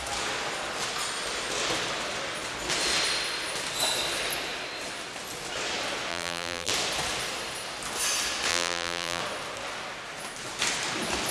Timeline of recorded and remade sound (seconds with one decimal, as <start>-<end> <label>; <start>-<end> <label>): 0.0-6.1 recorded; 6.1-6.7 remade; 6.7-8.5 recorded; 8.5-9.2 remade; 9.2-11.3 recorded